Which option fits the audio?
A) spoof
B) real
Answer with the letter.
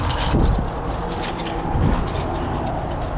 B